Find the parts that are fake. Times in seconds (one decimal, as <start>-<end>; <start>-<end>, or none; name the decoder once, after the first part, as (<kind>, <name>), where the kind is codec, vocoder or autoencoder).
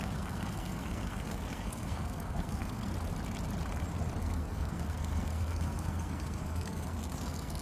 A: 0.0-2.9 (codec, SNAC); 4.2-7.6